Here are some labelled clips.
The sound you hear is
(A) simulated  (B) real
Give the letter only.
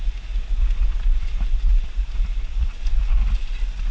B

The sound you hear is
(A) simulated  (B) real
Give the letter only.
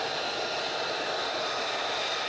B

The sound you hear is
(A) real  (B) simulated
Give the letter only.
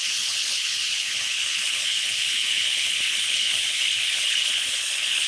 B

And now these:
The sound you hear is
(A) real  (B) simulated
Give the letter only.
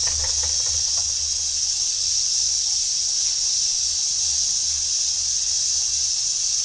A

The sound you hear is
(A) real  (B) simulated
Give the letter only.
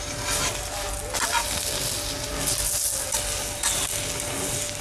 A